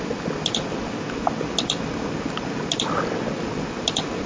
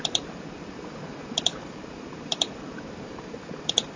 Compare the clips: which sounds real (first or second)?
first